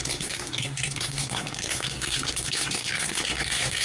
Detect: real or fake fake